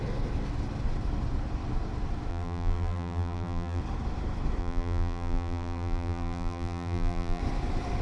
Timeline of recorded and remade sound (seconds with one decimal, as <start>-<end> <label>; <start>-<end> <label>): 0.0-2.3 recorded; 2.3-3.8 remade; 3.8-4.6 recorded; 4.6-7.4 remade; 7.4-8.0 recorded

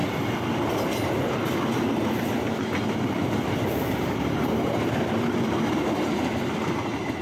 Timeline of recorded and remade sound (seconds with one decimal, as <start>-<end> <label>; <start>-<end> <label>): 0.0-1.3 recorded; 1.3-7.2 remade

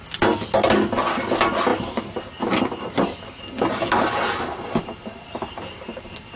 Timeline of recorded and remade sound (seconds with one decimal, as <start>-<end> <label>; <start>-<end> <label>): 0.0-6.4 recorded